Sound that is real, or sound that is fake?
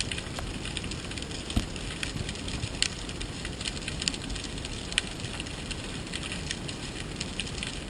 real